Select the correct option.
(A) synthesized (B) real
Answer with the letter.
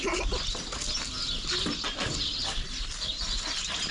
B